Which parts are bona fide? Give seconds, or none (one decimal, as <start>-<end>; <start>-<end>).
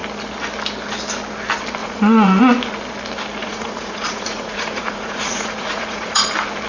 0.0-1.8; 2.4-3.4; 6.2-6.7